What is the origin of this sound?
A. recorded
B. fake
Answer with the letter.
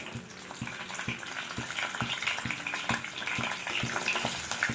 A